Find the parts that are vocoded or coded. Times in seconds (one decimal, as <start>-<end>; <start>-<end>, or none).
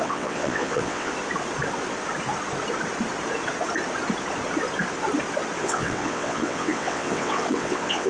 0.0-1.1; 5.6-8.1